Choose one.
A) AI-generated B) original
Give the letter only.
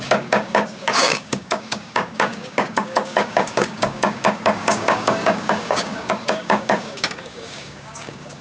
A